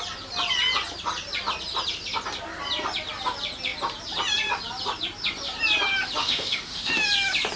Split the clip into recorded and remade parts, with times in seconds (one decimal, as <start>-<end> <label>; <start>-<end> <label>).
0.0-6.2 recorded; 6.2-6.9 remade; 6.9-7.6 recorded